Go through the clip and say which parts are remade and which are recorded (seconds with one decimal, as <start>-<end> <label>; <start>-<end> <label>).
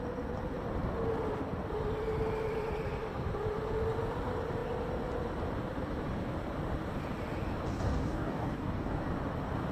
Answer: 0.0-7.7 recorded; 7.7-9.0 remade; 9.0-9.7 recorded